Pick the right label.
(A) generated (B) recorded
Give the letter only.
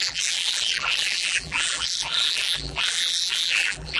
A